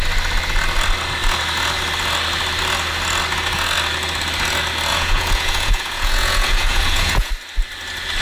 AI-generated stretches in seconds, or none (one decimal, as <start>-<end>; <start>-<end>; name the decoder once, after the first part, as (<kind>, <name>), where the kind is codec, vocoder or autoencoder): 4.9-7.3 (vocoder, Vocos)